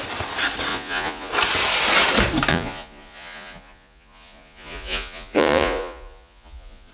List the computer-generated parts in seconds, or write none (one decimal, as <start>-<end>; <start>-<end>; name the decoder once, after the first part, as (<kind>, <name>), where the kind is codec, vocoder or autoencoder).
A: 0.7-1.3 (vocoder, Vocos); 2.5-6.9